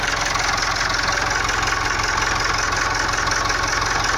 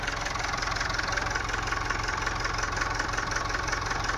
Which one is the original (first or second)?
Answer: first